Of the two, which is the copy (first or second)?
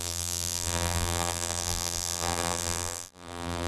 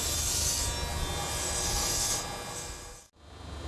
first